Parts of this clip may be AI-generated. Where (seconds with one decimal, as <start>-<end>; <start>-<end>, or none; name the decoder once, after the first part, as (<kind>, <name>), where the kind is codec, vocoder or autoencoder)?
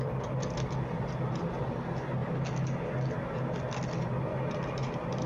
none